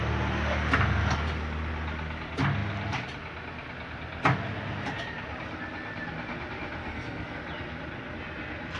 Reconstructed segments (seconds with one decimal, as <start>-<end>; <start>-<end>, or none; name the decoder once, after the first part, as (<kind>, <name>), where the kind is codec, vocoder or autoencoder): 6.8-7.4 (codec, SNAC)